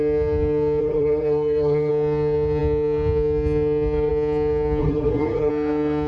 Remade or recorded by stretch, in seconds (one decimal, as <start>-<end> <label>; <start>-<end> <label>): 0.0-0.8 recorded; 0.8-1.9 remade; 1.9-4.8 recorded; 4.8-5.5 remade; 5.5-6.1 recorded